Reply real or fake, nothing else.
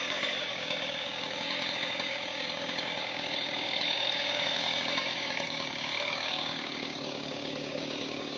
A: fake